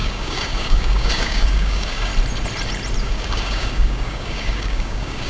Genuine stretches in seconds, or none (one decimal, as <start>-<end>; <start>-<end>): 2.1-3.0